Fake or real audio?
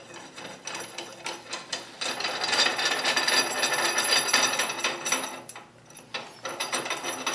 real